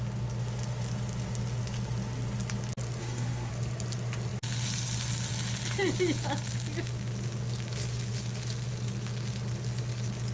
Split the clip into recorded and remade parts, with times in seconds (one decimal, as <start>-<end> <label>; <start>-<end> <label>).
0.0-3.0 recorded; 3.0-3.5 remade; 3.5-10.3 recorded